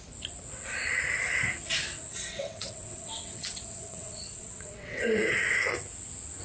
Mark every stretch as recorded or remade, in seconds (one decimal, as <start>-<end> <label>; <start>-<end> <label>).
0.0-2.1 recorded; 2.1-5.0 remade; 5.0-6.4 recorded